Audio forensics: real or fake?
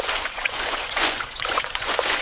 fake